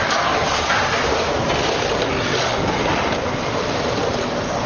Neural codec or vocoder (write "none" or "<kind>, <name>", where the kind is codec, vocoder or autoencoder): none